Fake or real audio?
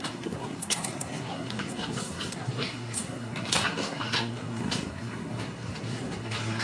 fake